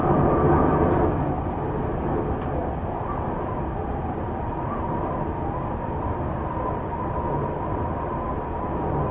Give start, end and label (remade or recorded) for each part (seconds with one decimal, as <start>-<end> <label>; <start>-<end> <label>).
0.0-9.1 recorded